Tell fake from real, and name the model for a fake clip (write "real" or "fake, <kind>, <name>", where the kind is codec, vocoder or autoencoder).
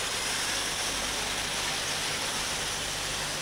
real